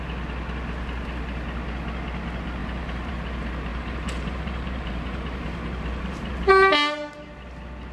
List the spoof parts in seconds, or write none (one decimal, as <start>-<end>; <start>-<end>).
2.6-3.1; 3.7-6.3